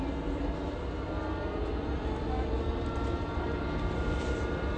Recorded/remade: recorded